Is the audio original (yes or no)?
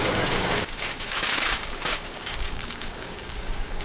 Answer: no